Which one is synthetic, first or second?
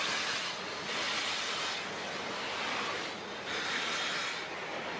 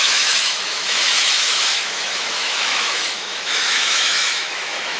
second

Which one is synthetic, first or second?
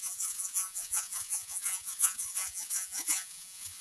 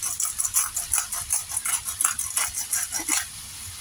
first